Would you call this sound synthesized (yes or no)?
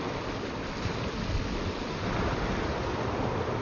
no